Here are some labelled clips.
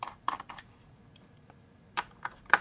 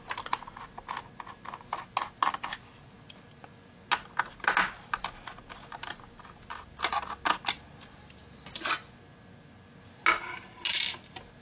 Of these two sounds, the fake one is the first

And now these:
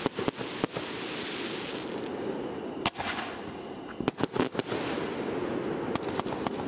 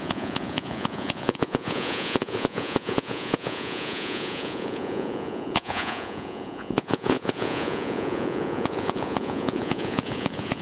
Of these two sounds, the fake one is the second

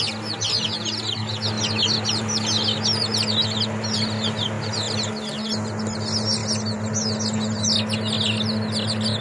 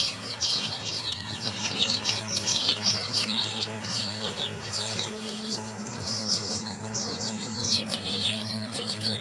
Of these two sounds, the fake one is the second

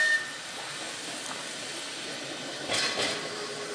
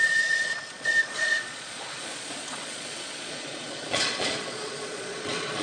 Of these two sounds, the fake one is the second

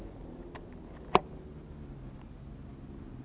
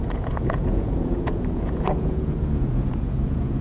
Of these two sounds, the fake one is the second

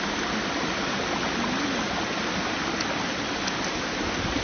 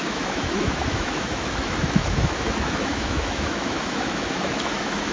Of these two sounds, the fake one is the second